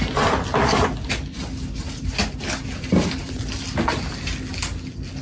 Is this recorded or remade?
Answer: recorded